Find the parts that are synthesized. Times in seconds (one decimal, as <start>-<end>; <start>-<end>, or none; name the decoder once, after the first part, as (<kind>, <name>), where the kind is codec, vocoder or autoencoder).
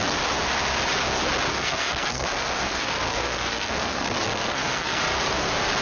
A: 1.5-5.0 (codec, SNAC)